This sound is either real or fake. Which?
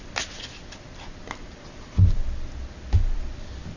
real